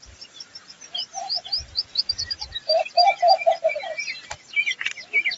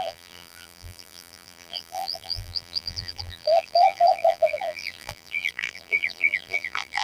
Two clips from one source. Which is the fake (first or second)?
second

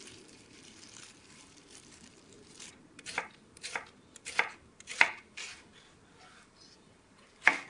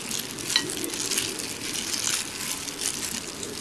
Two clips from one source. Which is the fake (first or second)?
first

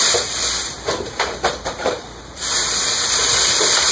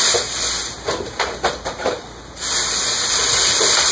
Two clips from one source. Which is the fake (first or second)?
first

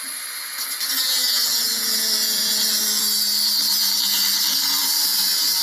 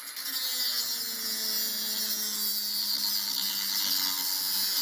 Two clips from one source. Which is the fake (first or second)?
first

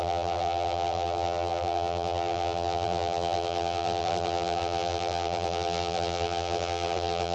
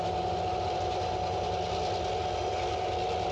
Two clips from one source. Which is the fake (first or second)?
first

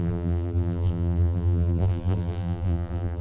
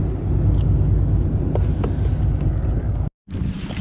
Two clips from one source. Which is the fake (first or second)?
first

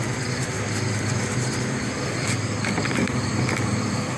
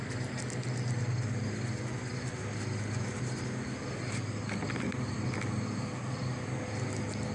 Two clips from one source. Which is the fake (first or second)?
first